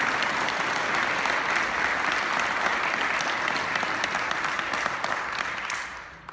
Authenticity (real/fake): real